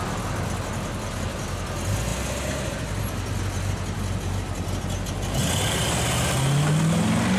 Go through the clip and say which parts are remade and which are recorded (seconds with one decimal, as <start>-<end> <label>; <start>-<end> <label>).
0.0-7.4 recorded